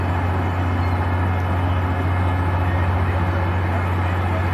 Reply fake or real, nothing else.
real